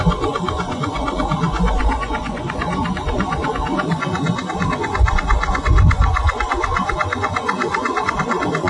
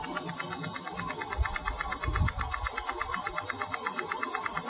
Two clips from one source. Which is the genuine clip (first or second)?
second